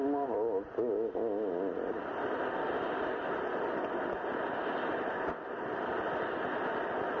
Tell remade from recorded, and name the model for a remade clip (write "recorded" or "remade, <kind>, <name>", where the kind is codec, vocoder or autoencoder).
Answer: recorded